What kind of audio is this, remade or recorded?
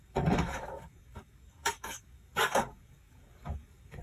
remade